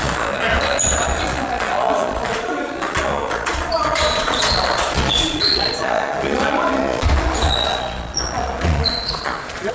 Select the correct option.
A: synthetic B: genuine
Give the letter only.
A